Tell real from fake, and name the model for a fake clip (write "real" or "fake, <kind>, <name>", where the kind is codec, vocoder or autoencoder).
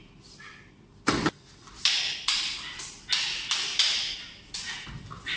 real